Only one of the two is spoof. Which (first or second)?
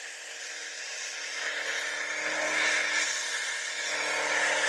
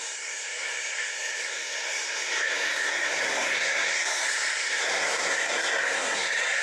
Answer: second